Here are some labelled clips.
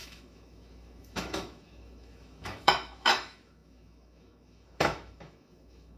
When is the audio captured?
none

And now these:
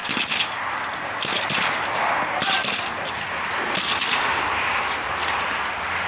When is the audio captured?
0.0-6.1

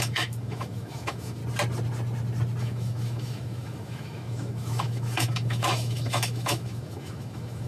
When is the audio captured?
1.4-2.6